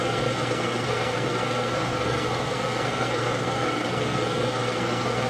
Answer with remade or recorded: remade